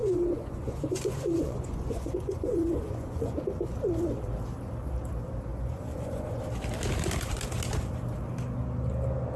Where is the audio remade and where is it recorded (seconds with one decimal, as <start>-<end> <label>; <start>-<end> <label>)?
0.0-3.4 remade; 3.4-5.5 recorded; 5.5-6.4 remade; 6.4-9.4 recorded

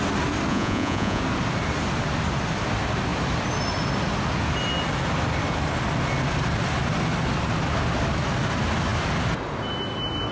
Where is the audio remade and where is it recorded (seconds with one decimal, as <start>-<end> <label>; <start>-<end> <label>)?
0.0-0.5 recorded; 0.5-1.2 remade; 1.2-10.3 recorded

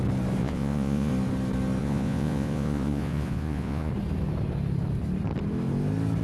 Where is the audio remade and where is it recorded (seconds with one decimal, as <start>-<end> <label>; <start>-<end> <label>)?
0.0-0.4 recorded; 0.4-1.1 remade; 1.1-1.8 recorded; 1.8-3.9 remade; 3.9-6.2 recorded

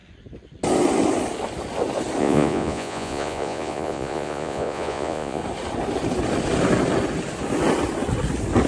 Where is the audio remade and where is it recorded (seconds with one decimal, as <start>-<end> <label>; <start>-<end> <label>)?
0.0-2.2 recorded; 2.2-5.4 remade; 5.4-8.7 recorded

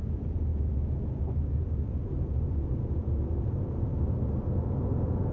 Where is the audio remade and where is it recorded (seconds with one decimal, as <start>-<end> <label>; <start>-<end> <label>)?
0.0-3.9 remade; 3.9-4.5 recorded; 4.5-5.3 remade

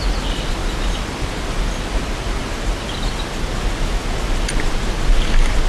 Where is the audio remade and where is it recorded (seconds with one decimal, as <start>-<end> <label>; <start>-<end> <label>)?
0.0-5.7 recorded

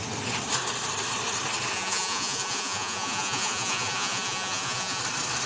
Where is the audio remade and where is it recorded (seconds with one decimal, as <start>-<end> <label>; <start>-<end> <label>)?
0.0-1.7 recorded; 1.7-5.0 remade; 5.0-5.5 recorded

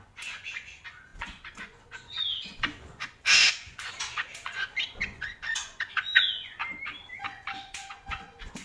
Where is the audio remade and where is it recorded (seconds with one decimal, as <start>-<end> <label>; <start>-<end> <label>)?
0.0-6.6 remade; 6.6-7.2 recorded; 7.2-8.6 remade